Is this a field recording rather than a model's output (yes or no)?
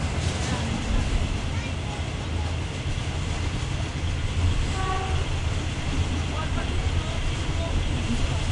yes